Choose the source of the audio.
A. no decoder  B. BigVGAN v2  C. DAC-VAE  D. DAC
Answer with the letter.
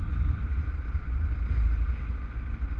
A